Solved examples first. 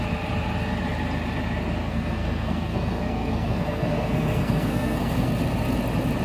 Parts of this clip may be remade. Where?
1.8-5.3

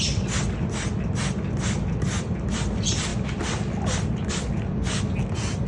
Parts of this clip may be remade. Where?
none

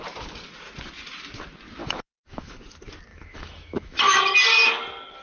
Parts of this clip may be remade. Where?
1.8-2.6; 3.1-4.2

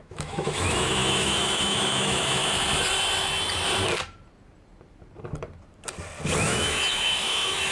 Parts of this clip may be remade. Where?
0.0-2.4; 6.4-7.7

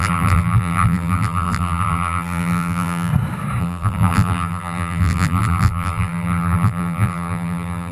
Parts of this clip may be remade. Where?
0.0-3.1; 3.6-7.9

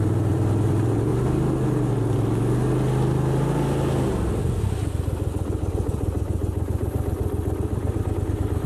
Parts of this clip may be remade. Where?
0.0-1.1; 5.7-8.7

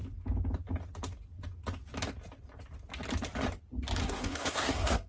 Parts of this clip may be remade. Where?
4.0-5.1

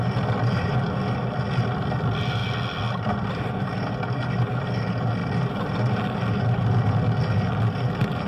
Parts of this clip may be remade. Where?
none